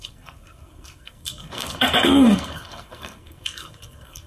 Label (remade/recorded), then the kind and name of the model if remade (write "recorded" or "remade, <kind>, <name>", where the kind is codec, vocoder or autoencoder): remade, codec, SNAC